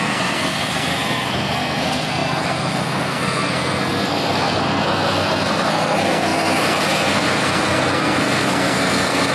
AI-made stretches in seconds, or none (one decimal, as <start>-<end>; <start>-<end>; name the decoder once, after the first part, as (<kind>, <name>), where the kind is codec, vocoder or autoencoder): 0.0-9.3 (codec, SNAC)

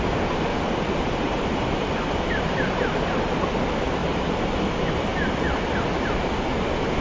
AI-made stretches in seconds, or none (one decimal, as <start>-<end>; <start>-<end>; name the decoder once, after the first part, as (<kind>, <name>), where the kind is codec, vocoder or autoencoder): 0.5-3.5 (vocoder, BigVGAN v2); 4.0-4.7

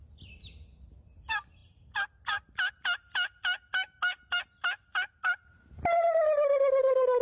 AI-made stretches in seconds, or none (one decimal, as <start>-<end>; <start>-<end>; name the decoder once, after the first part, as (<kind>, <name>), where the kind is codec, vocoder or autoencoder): none

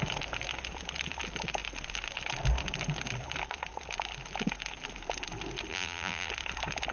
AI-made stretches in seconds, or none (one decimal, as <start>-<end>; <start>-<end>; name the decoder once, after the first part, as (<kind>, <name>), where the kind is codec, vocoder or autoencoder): 5.7-6.3 (vocoder, BigVGAN v2)